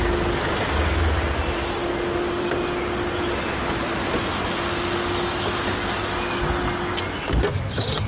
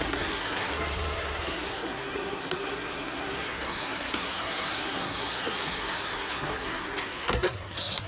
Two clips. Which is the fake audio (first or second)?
second